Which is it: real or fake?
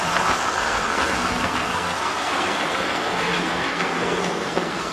fake